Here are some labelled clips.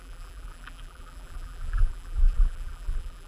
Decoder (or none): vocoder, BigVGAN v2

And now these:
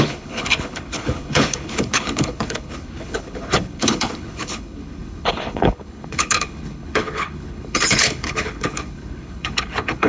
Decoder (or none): codec, HILCodec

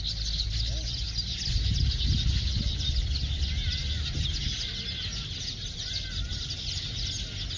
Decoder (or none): none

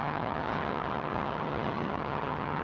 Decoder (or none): vocoder, HiFi-GAN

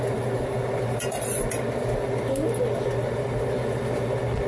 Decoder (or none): none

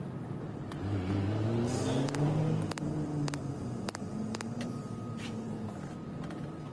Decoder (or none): none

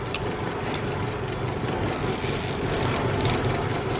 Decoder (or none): none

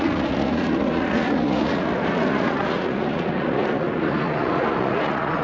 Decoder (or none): vocoder, Vocos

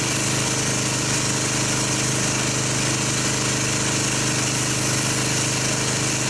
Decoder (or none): none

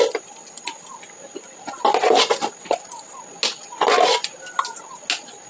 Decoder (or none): none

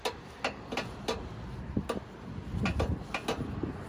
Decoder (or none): none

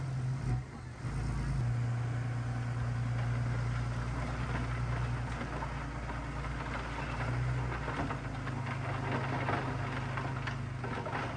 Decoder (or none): none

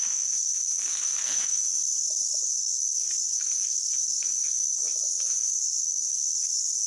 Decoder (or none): codec, SNAC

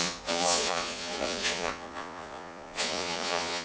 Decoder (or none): vocoder, Vocos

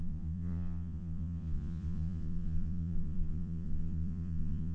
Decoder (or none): vocoder, Vocos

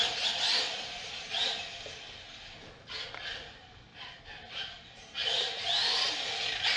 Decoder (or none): none